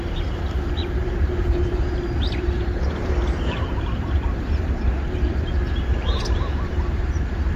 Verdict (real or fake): fake